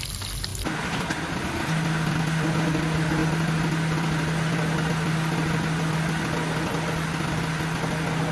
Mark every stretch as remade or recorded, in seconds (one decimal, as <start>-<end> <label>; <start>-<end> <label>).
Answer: 0.0-8.3 recorded